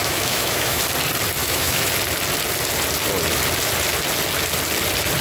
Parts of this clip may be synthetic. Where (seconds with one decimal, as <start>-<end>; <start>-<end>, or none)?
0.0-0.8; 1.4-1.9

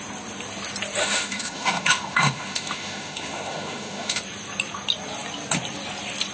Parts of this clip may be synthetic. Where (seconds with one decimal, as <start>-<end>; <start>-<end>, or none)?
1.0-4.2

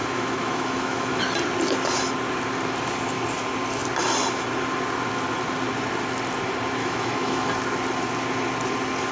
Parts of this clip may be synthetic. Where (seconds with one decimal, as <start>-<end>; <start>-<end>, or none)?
0.0-1.2; 6.8-7.5

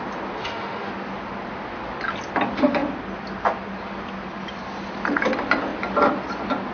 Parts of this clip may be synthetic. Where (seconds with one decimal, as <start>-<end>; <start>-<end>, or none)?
0.4-0.9

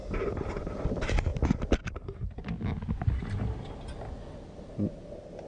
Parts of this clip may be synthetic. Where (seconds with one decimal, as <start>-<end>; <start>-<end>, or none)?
none

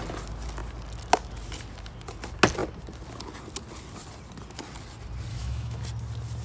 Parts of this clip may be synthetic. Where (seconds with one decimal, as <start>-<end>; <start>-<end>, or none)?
5.3-5.8

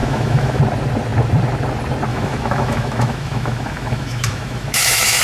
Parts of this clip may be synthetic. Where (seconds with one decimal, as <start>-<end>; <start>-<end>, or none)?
0.0-0.6; 2.1-5.2